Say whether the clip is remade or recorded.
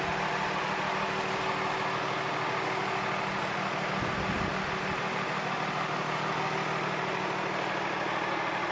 recorded